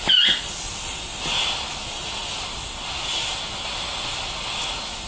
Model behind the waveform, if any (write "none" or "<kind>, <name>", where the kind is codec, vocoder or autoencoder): none